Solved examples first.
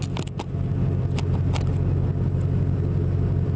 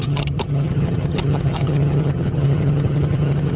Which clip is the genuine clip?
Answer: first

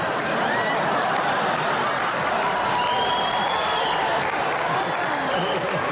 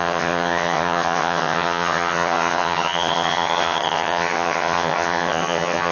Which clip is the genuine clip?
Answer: first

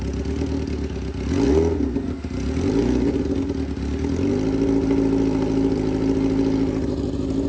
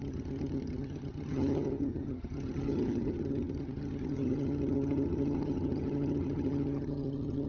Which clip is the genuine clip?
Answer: first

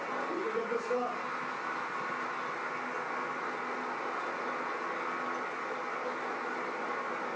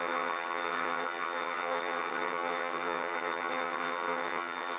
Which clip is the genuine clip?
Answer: first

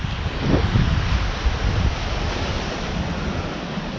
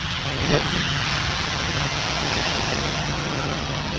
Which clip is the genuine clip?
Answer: first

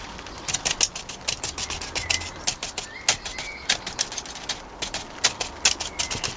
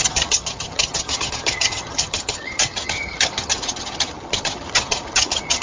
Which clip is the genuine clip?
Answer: first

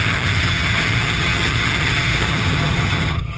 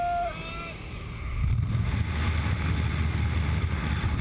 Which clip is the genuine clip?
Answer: second